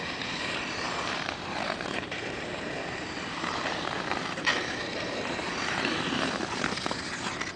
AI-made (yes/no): yes